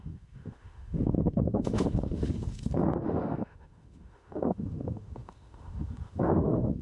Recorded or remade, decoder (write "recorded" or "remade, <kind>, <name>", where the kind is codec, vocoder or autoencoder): remade, autoencoder, DAC-VAE